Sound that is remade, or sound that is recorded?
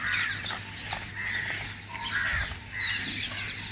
recorded